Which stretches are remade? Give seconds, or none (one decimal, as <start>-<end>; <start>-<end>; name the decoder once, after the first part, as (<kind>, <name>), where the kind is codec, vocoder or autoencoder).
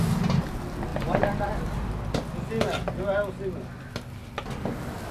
0.9-1.5 (vocoder, BigVGAN v2)